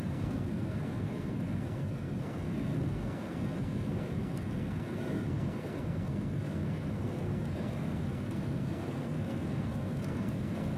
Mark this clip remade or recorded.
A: remade